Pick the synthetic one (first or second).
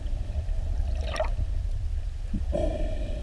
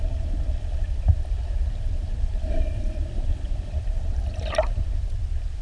second